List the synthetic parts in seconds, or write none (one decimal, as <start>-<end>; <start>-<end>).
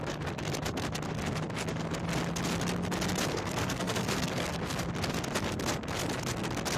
3.3-4.7